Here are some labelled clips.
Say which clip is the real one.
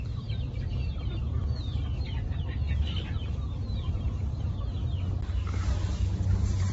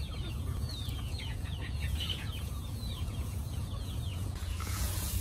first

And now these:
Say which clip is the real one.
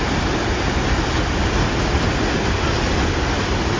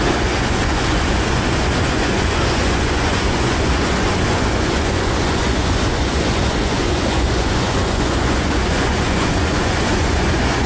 first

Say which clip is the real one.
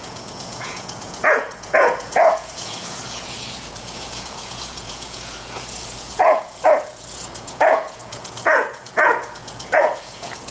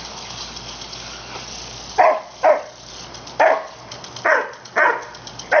second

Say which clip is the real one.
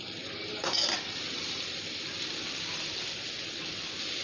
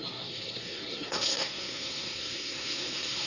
first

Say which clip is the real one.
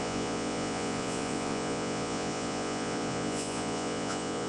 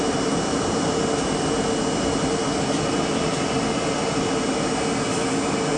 second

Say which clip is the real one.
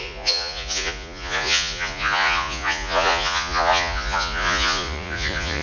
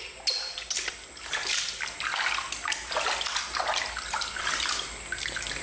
second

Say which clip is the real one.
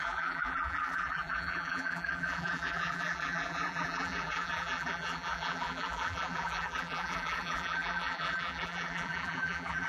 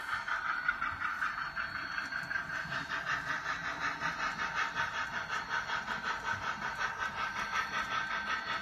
second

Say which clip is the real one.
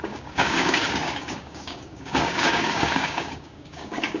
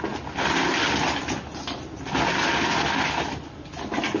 second